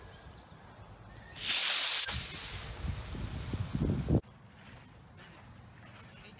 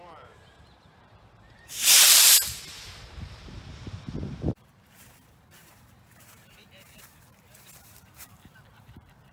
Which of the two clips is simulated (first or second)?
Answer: second